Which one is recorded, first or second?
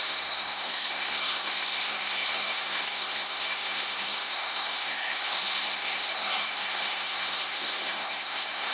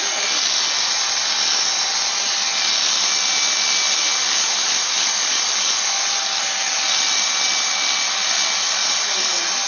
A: second